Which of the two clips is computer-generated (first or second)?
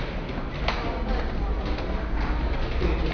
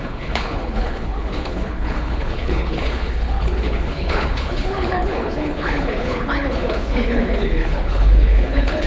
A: second